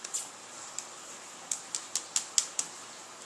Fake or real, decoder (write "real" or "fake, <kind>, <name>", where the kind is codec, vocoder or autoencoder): real